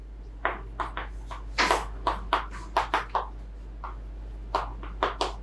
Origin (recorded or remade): recorded